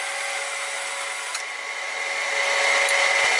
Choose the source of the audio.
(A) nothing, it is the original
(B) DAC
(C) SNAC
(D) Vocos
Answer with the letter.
A